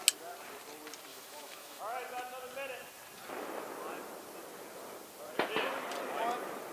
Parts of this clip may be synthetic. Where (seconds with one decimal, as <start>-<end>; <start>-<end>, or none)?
1.1-1.8